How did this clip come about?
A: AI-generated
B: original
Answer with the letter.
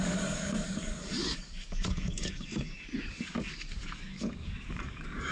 A